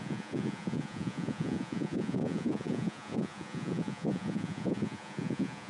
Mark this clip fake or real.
fake